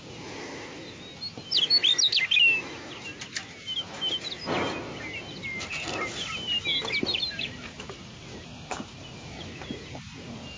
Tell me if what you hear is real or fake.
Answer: real